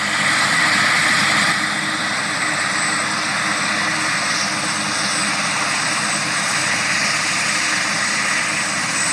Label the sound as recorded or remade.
recorded